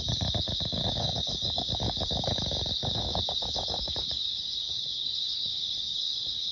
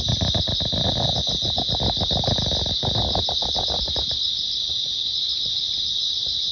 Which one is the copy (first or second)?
first